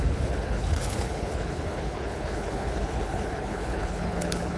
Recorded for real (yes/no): no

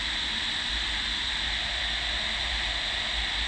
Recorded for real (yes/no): yes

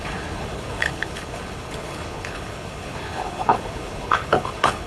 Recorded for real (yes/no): no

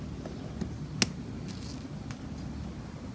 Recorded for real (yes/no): yes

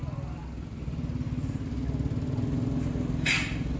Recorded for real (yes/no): yes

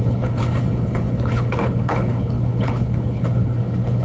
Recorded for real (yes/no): no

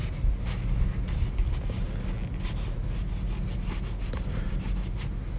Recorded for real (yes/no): yes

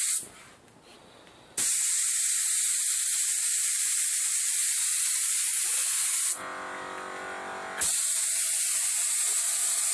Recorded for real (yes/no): yes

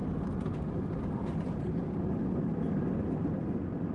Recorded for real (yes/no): yes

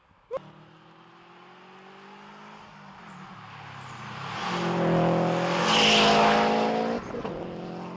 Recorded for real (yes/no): yes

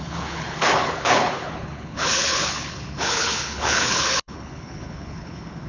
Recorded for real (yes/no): no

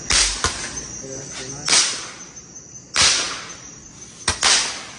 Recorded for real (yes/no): yes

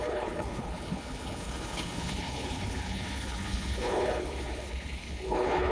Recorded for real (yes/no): no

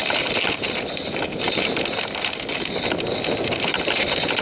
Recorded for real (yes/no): yes